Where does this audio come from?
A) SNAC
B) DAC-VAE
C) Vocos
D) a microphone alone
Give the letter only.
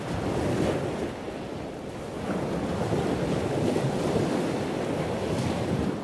D